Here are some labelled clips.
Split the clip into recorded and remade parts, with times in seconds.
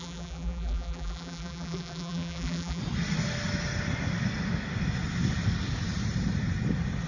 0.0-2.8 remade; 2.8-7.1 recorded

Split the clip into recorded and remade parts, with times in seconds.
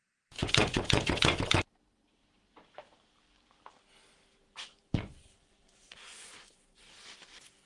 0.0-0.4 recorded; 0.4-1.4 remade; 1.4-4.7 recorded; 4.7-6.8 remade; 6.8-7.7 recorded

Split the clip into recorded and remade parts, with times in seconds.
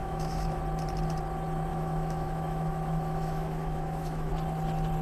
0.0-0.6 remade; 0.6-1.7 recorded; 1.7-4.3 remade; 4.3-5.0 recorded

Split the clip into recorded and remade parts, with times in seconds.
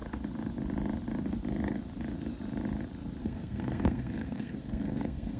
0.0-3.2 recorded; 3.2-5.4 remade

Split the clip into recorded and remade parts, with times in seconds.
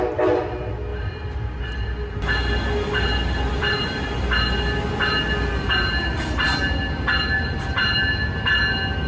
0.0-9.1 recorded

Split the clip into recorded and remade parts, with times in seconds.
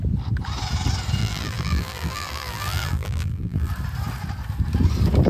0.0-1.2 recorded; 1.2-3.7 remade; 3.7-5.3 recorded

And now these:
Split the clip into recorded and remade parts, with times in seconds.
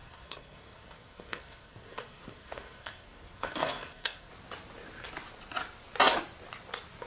0.0-4.3 remade; 4.3-7.1 recorded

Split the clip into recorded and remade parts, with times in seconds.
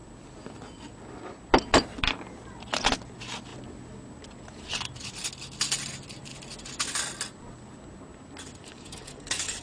0.0-8.6 recorded; 8.6-9.6 remade